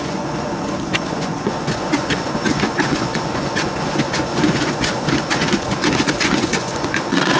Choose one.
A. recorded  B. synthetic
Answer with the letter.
B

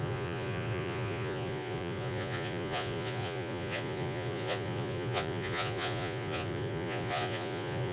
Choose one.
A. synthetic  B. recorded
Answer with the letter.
A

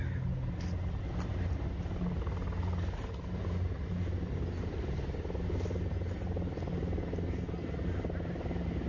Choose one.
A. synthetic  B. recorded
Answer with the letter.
B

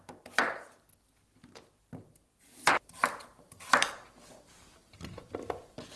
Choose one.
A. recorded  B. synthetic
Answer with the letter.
A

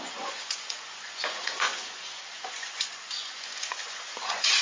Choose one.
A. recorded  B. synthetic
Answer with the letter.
B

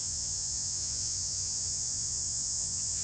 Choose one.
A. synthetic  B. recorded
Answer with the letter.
A